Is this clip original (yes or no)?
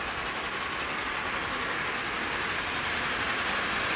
yes